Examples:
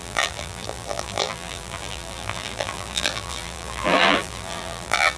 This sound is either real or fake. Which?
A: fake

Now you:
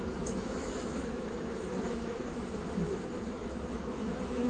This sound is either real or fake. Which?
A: fake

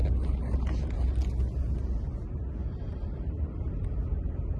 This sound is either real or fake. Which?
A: real